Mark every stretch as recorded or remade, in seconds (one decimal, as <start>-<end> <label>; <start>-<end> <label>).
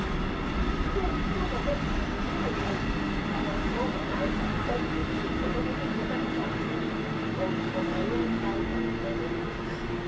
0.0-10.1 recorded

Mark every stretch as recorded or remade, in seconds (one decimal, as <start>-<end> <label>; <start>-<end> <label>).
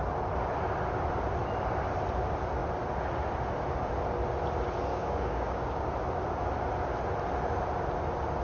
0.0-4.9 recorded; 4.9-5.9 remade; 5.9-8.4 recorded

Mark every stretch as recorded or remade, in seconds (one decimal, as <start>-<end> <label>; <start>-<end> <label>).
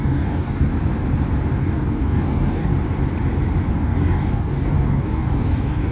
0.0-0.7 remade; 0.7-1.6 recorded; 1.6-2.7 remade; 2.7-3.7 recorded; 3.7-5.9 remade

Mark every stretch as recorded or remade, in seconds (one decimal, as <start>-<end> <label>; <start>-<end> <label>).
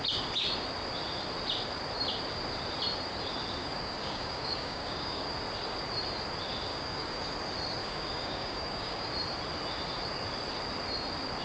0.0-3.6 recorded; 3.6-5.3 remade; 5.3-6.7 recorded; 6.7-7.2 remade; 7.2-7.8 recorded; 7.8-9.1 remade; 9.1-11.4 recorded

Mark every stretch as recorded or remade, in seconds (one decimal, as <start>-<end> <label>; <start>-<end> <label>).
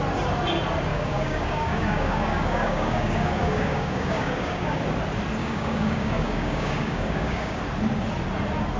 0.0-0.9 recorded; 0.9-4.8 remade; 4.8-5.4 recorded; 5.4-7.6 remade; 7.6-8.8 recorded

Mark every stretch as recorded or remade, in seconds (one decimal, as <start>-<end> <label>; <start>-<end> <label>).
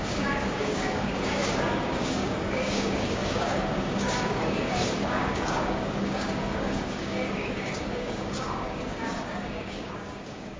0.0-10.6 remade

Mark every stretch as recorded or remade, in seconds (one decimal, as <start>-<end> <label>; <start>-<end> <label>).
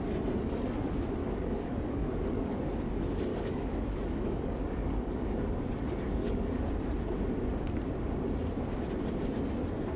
0.0-1.2 recorded; 1.2-2.6 remade; 2.6-3.3 recorded; 3.3-6.6 remade; 6.6-10.0 recorded